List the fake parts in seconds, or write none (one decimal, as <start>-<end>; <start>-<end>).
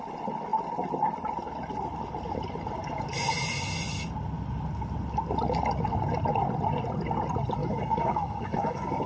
7.6-9.1